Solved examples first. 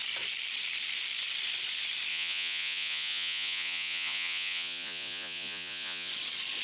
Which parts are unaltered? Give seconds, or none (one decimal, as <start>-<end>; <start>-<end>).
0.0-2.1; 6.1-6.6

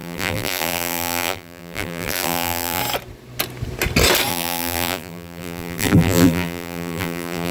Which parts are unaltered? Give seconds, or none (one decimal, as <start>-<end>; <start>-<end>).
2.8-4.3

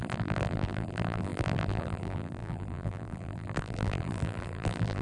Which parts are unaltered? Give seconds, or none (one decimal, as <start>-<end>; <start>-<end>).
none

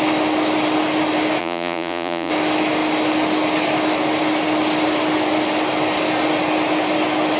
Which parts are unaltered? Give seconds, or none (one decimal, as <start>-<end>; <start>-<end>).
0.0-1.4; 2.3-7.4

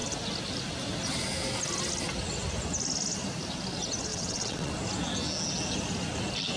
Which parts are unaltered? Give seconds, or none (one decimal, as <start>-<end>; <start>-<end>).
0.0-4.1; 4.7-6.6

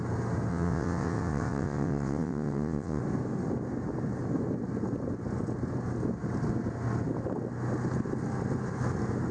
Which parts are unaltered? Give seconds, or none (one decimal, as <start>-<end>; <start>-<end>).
0.0-0.5; 3.0-9.3

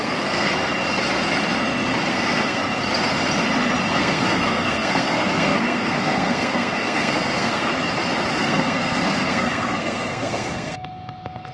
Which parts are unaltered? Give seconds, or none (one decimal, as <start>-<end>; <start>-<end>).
0.5-2.1; 2.6-3.9; 7.7-8.4